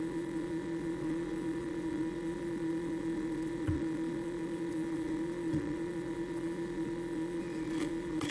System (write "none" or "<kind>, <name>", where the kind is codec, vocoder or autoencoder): vocoder, Vocos